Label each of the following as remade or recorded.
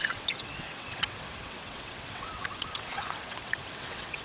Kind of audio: remade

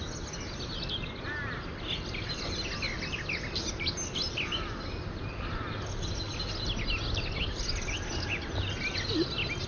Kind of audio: recorded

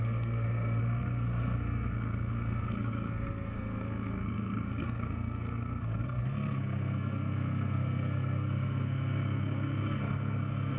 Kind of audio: remade